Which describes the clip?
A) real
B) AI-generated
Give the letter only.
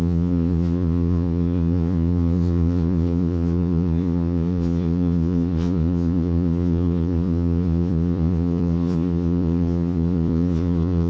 B